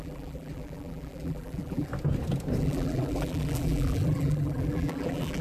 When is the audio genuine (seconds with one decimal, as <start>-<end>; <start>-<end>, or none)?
1.9-2.6